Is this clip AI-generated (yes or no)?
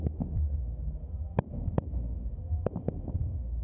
yes